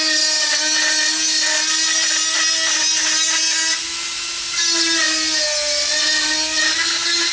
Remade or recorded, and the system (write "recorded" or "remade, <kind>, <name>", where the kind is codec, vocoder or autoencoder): recorded